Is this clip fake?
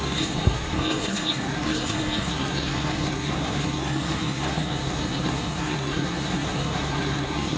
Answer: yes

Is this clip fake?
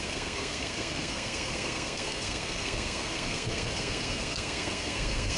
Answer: yes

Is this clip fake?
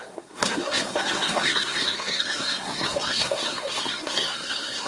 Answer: yes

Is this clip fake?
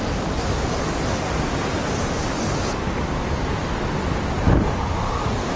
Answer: no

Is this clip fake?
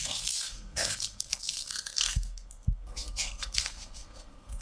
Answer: yes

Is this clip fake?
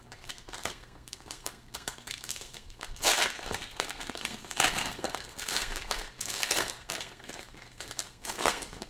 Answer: yes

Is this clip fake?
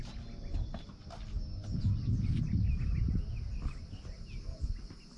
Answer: no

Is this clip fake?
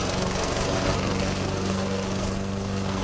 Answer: yes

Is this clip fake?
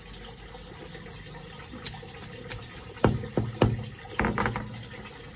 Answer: no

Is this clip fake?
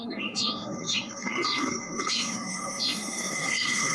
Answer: yes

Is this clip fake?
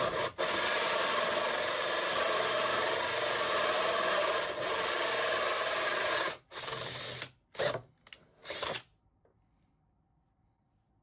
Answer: no